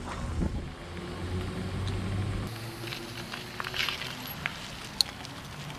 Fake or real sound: real